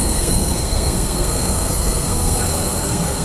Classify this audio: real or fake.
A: fake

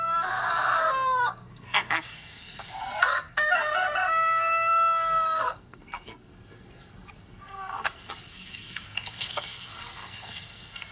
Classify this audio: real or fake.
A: fake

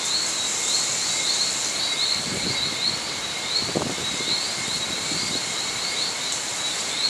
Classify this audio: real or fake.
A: real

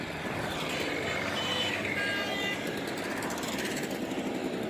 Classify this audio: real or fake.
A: real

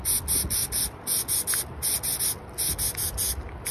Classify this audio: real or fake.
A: real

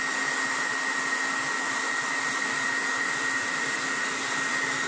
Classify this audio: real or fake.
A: real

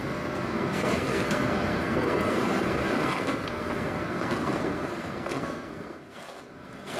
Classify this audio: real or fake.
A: fake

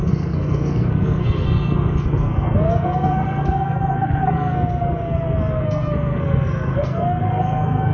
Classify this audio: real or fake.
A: fake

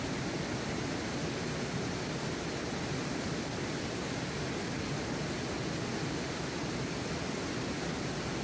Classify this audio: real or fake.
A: real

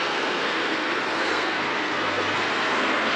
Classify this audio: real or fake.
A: fake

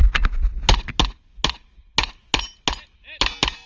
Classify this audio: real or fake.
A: real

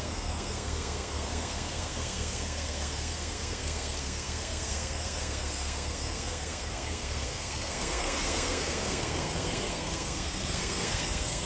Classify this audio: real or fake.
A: fake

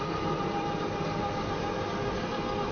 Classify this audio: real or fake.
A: real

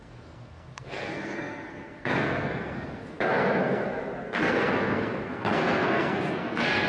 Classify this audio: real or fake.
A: fake